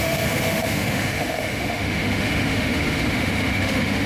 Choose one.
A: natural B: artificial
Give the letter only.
B